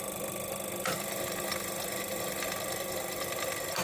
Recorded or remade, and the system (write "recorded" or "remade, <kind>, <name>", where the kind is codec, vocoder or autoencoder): remade, vocoder, BigVGAN v2